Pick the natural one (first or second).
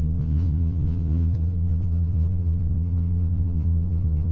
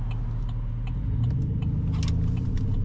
second